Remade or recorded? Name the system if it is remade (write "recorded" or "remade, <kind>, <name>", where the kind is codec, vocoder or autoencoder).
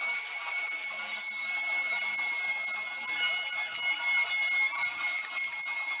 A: recorded